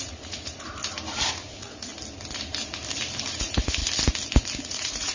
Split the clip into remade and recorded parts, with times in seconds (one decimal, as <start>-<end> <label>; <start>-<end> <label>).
0.0-0.8 remade; 0.8-1.3 recorded; 1.3-1.9 remade; 1.9-3.4 recorded; 3.4-3.8 remade; 3.8-4.6 recorded; 4.6-5.1 remade